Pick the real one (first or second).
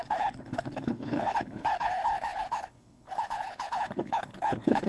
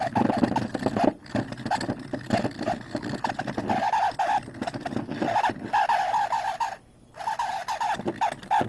second